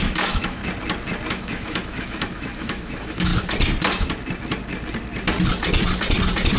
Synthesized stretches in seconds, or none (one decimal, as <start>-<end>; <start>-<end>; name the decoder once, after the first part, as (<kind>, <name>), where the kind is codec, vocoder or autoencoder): 0.0-0.6 (autoencoder, DAC-VAE); 1.3-3.3